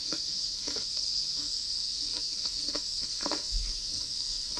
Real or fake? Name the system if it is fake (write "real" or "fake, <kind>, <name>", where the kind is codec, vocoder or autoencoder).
fake, codec, SNAC